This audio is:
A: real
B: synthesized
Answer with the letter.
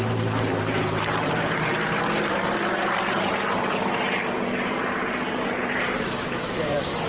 B